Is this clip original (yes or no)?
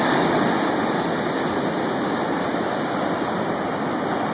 yes